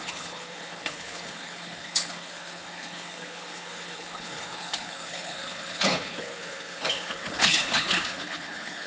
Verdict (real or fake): fake